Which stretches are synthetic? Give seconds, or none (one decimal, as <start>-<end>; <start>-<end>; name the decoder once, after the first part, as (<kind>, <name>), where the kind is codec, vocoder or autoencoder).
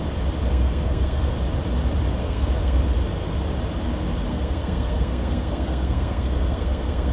0.5-1.3 (codec, SNAC); 2.2-2.8; 4.3-7.1